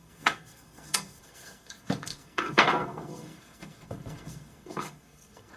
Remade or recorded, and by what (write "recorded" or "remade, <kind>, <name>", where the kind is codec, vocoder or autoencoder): remade, codec, SNAC